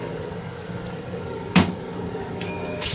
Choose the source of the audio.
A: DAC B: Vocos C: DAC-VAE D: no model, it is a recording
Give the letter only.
A